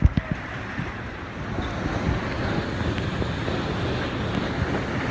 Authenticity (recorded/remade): recorded